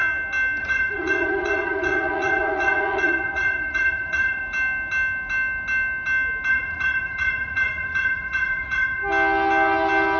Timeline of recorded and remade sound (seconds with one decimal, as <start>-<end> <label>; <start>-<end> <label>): 0.0-0.6 recorded; 0.6-4.4 remade; 4.4-6.5 recorded; 6.5-9.0 remade; 9.0-10.2 recorded